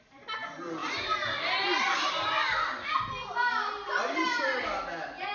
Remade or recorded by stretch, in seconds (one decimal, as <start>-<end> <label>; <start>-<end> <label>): 0.0-5.3 recorded